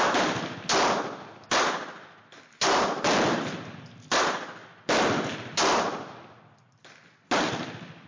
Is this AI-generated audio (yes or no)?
no